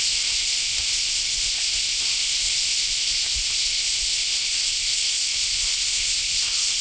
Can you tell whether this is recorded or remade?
remade